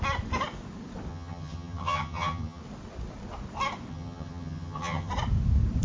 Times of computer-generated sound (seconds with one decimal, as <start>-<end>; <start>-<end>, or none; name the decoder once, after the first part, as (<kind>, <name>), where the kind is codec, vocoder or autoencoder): 1.1-2.6 (vocoder, HiFi-GAN); 3.9-5.1